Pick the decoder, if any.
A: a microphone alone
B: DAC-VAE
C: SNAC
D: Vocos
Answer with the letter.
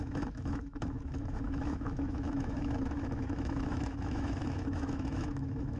B